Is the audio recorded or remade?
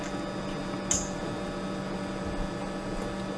recorded